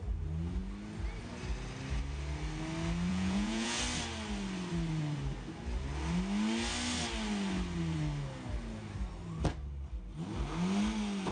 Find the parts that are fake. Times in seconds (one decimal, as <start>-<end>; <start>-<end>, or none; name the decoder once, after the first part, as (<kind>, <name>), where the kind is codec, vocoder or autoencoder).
3.1-3.8 (vocoder, Vocos)